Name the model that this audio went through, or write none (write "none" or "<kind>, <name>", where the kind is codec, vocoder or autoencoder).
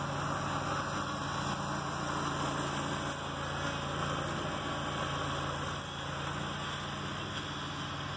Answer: none